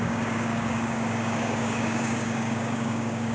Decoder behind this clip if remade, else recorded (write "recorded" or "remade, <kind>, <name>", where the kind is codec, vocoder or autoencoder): remade, codec, DAC